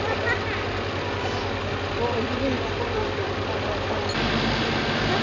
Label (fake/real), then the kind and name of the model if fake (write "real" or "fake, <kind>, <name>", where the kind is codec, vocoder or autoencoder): real